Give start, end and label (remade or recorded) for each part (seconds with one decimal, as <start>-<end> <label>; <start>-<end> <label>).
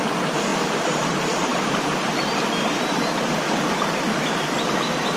0.0-1.5 recorded; 1.5-2.0 remade; 2.0-5.2 recorded